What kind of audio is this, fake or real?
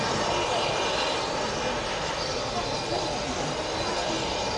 real